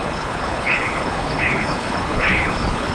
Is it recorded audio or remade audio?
remade